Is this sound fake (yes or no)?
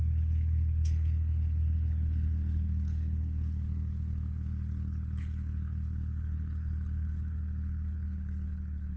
yes